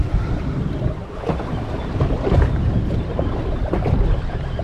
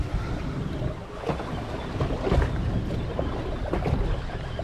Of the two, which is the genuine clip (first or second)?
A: second